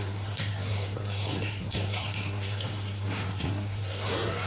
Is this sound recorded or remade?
remade